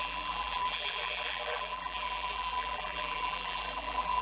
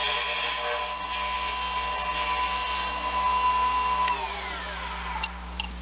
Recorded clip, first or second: second